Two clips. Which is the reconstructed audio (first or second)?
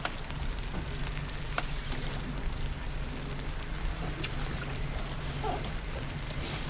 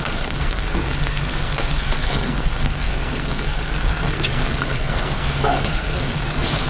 second